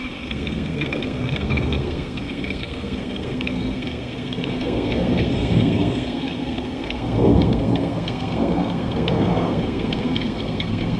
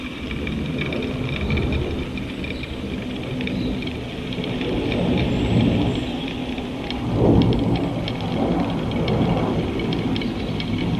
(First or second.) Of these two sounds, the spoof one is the first